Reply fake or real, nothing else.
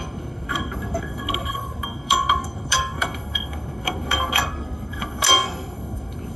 fake